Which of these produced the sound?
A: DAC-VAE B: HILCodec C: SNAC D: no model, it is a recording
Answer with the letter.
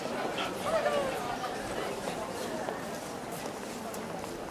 D